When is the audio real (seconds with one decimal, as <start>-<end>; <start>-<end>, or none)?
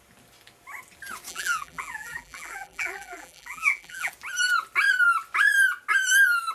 0.0-1.3; 4.1-6.5